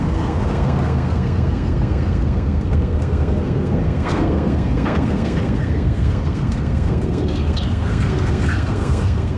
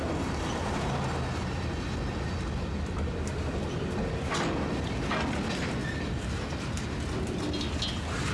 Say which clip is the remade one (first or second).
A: first